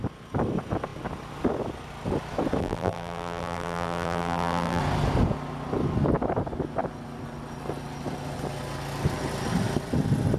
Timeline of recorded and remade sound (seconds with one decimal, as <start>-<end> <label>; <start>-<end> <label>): 0.0-2.6 recorded; 2.6-4.8 remade; 4.8-10.4 recorded